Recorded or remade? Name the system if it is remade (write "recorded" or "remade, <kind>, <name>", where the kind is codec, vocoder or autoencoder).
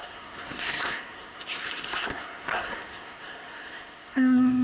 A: remade, codec, SNAC